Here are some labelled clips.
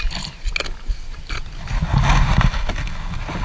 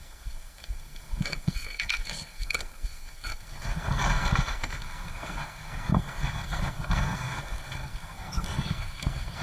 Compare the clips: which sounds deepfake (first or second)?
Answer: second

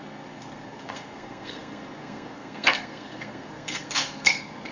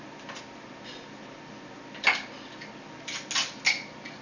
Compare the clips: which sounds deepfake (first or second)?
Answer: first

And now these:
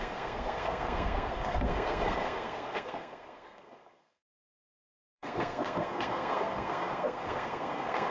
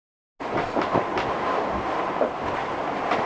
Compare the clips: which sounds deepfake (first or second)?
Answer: first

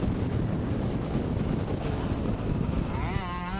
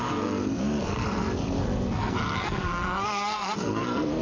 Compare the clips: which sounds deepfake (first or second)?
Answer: second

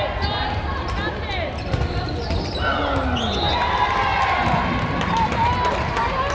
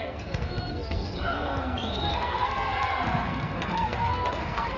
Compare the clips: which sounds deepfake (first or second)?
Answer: second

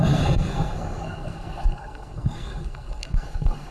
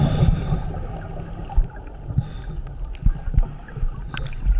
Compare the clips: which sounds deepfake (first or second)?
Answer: first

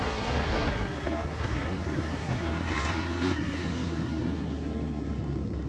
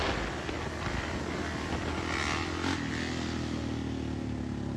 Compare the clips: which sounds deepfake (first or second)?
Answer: first